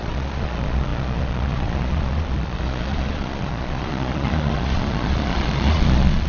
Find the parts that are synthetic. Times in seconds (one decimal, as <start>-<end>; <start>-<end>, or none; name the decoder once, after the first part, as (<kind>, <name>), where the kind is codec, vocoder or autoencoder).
0.0-6.3 (vocoder, Vocos)